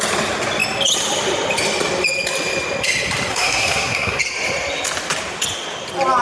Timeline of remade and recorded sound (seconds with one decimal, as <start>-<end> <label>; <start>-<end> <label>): 0.0-3.3 recorded; 3.3-4.2 remade; 4.2-6.2 recorded